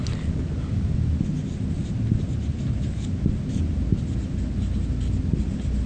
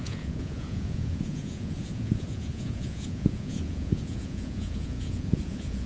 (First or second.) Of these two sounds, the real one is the first